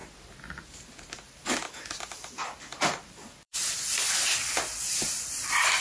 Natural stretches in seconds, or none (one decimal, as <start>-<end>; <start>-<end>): 0.0-2.7; 4.3-5.8